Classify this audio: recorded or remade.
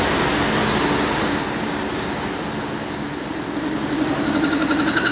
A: recorded